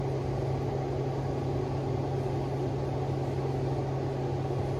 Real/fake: real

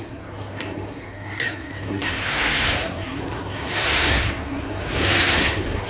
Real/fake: fake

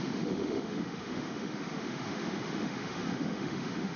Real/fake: fake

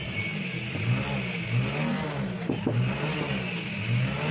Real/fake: real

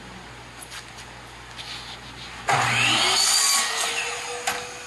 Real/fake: real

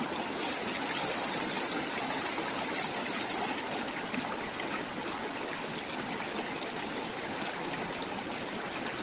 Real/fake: real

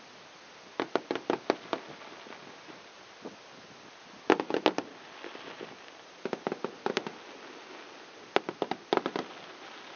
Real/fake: real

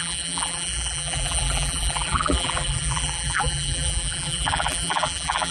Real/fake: fake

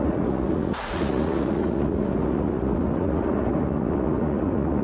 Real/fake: fake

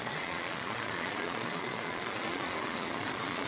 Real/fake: fake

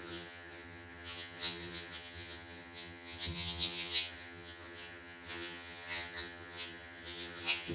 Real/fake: fake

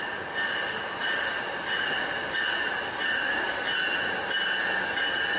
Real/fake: real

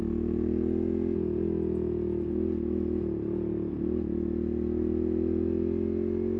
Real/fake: real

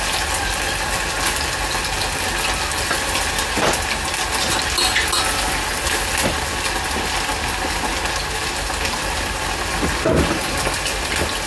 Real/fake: real